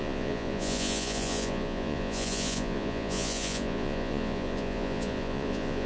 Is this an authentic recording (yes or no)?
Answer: no